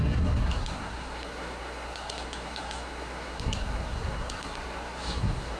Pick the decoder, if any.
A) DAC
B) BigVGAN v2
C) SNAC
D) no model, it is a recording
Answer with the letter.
C